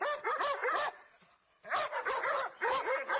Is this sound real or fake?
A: real